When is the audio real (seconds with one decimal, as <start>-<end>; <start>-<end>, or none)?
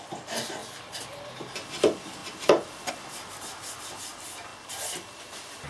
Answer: 0.0-0.6; 1.3-2.2; 2.9-5.7